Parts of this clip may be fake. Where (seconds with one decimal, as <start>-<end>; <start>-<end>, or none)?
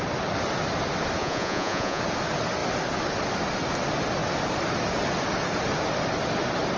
1.2-2.0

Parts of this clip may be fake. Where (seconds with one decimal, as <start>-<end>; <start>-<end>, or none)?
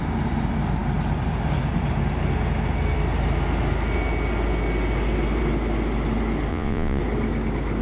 6.5-7.0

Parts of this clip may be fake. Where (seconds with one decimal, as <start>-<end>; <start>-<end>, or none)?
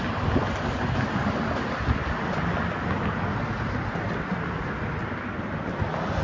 none